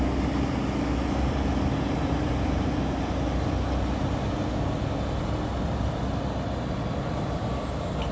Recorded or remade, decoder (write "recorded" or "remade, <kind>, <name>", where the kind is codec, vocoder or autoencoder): recorded